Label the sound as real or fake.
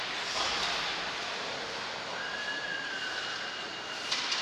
real